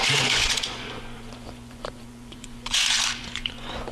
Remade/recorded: remade